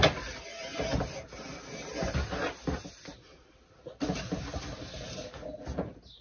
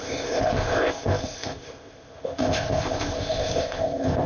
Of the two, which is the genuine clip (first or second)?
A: first